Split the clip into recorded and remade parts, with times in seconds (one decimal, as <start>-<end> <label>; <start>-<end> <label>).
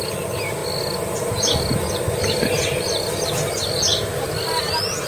0.0-5.1 recorded